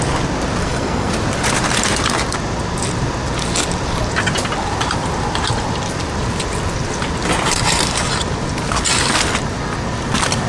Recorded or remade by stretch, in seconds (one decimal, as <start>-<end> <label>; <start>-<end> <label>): 0.0-0.6 recorded; 0.6-1.1 remade; 1.1-10.5 recorded